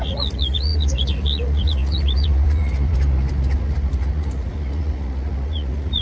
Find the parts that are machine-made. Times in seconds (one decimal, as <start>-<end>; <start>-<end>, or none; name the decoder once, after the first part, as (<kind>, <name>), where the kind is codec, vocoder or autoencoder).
0.0-6.0 (vocoder, Vocos)